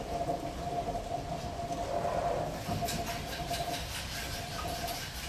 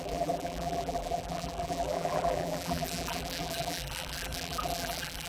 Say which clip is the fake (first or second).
second